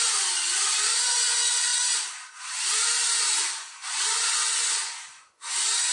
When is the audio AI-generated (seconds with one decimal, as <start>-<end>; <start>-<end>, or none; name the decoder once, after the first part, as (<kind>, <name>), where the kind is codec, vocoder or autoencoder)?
0.0-1.7 (vocoder, Vocos); 3.2-5.9